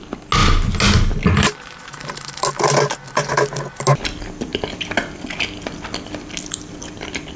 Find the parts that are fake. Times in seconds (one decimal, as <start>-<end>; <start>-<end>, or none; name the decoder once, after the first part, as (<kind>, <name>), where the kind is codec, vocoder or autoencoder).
none